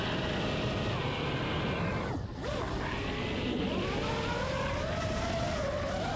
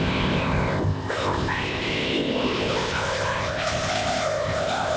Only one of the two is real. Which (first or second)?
first